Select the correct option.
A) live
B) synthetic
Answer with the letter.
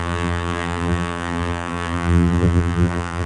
B